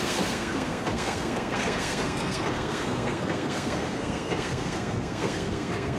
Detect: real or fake fake